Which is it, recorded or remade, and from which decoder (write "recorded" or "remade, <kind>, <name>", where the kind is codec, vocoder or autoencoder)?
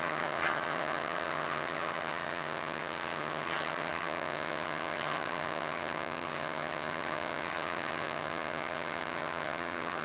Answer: remade, vocoder, HiFi-GAN